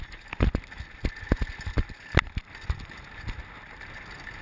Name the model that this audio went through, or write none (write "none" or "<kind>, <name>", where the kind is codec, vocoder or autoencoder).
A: none